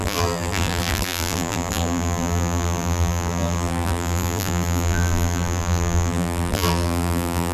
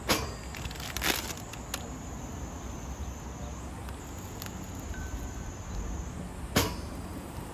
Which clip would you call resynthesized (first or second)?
first